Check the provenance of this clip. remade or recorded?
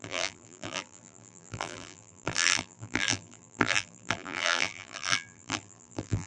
remade